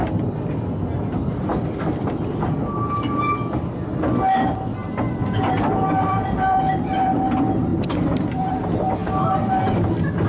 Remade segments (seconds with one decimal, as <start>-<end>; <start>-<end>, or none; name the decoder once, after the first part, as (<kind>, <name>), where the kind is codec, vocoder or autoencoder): 5.2-6.7 (vocoder, BigVGAN v2); 7.7-8.5